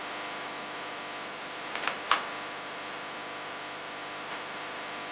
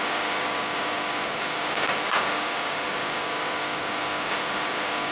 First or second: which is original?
first